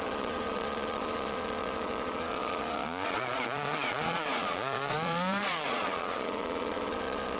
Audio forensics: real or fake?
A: fake